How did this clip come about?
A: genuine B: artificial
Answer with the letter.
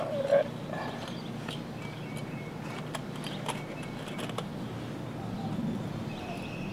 A